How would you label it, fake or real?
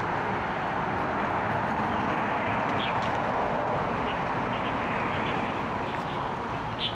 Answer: real